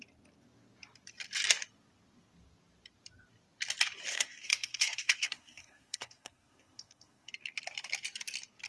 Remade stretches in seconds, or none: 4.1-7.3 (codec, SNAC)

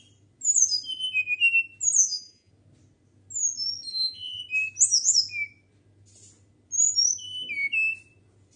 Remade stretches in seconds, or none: 2.0-2.5 (vocoder, Vocos); 3.9-4.4